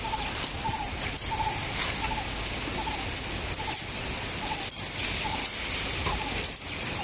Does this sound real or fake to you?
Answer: real